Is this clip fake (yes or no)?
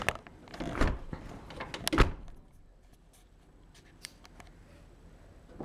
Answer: no